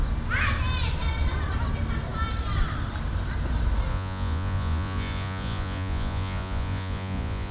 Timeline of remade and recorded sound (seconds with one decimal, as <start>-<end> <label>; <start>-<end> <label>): 0.0-3.9 recorded; 3.9-7.5 remade